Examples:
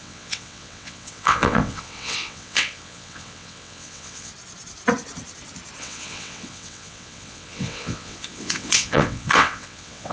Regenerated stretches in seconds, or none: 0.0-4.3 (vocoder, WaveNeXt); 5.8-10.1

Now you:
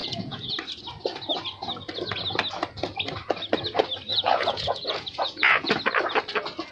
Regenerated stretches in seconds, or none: 0.0-0.5 (vocoder, Vocos); 4.1-5.7

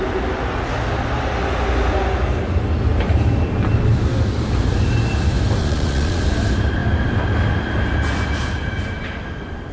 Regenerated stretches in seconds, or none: 5.6-6.2 (vocoder, Vocos)